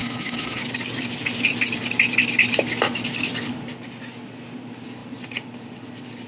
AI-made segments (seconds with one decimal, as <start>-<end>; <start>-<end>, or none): 0.0-0.6